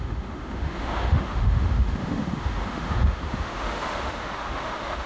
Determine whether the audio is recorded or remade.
remade